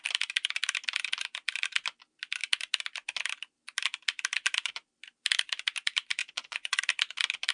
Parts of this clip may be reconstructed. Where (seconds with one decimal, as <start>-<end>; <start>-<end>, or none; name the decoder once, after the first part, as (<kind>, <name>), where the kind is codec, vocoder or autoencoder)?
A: 6.2-6.8 (vocoder, Vocos)